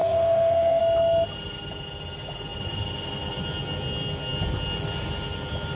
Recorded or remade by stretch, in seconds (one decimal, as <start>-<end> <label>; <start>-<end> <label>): 0.0-0.8 remade; 0.8-5.8 recorded